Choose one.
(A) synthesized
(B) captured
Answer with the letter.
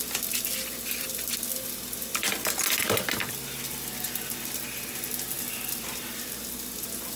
B